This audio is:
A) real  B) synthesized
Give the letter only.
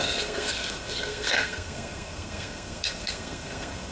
B